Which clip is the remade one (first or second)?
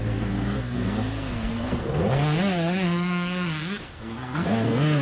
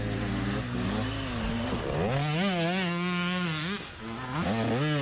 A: first